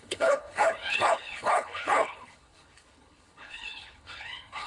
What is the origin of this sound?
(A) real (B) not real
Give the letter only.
B